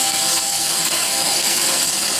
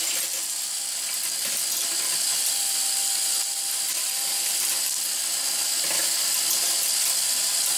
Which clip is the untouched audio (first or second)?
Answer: second